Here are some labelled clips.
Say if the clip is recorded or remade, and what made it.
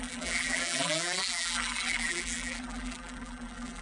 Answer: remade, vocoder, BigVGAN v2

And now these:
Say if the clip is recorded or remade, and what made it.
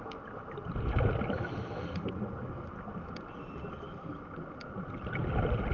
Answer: recorded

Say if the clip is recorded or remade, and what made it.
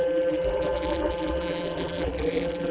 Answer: remade, vocoder, BigVGAN v2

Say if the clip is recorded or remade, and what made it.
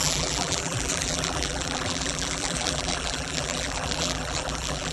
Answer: remade, vocoder, BigVGAN v2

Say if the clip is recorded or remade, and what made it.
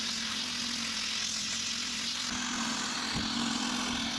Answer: recorded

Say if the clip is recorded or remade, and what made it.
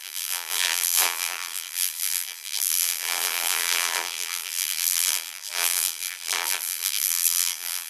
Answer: remade, vocoder, BigVGAN v2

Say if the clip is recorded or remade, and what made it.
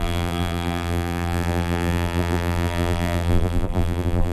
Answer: remade, vocoder, BigVGAN v2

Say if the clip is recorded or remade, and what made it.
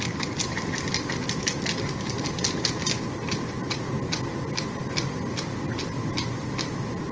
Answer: recorded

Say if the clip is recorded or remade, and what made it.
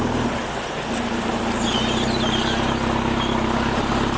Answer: recorded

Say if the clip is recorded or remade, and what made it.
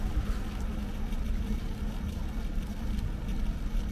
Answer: recorded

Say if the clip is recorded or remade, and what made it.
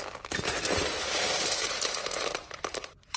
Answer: remade, vocoder, BigVGAN v2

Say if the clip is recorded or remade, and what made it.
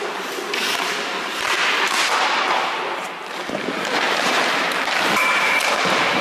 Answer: remade, vocoder, BigVGAN v2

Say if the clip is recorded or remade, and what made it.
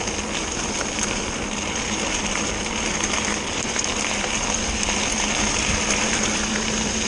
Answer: recorded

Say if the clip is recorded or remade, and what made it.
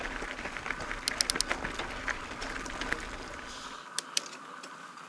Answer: recorded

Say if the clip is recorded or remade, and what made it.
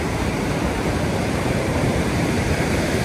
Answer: remade, vocoder, BigVGAN v2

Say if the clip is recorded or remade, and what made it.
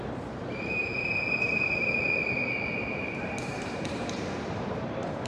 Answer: remade, vocoder, BigVGAN v2